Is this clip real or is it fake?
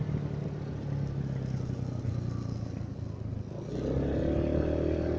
real